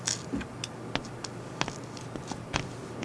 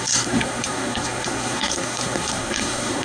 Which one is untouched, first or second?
first